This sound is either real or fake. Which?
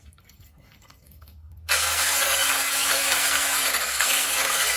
fake